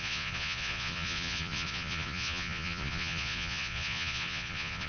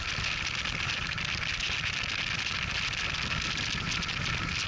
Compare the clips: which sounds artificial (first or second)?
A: first